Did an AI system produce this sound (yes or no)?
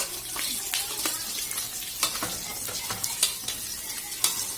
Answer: yes